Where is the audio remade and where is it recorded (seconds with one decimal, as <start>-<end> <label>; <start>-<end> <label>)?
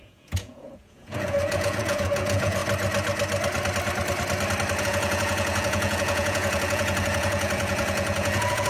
0.0-2.6 remade; 2.6-4.8 recorded; 4.8-8.7 remade